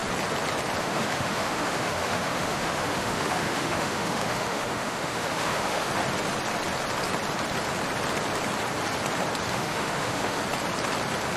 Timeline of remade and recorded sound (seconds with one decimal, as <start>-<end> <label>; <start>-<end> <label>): 0.0-0.8 recorded; 0.8-5.9 remade; 5.9-9.5 recorded; 9.5-10.4 remade; 10.4-11.4 recorded

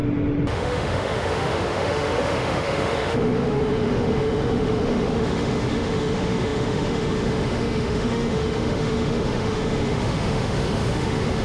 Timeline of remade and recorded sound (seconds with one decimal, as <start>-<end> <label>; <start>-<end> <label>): 0.0-0.5 recorded; 0.5-11.4 remade

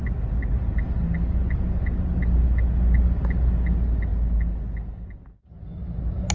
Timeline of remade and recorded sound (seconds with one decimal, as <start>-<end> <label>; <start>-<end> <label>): 0.0-6.3 recorded

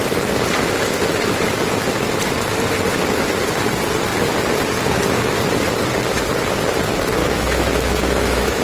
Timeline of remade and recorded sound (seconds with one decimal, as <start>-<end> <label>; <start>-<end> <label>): 0.0-7.2 recorded; 7.2-8.6 remade

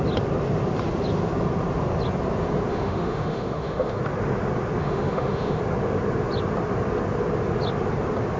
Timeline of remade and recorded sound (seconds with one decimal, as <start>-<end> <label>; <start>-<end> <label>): 0.0-2.7 recorded; 2.7-4.0 remade; 4.0-4.8 recorded; 4.8-5.6 remade; 5.6-8.4 recorded

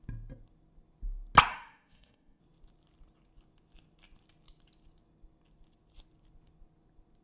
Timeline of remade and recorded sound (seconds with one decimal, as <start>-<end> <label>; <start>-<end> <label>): 0.0-1.5 recorded; 1.5-2.4 remade; 2.4-7.2 recorded